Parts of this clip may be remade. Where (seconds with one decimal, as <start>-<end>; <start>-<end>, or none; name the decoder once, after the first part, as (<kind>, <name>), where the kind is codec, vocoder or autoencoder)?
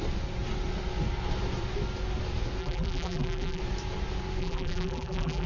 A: 2.6-3.6 (vocoder, BigVGAN v2); 4.4-5.5